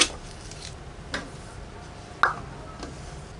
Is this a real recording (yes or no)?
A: yes